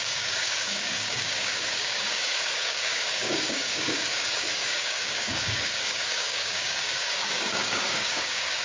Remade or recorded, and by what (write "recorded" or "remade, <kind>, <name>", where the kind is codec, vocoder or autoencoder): remade, codec, DAC